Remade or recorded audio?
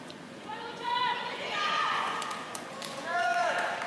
remade